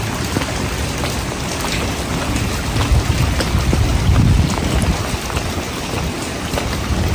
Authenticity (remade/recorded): recorded